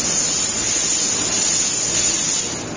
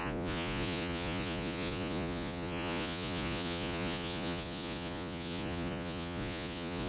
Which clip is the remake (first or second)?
second